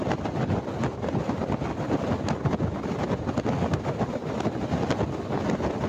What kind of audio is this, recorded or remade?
recorded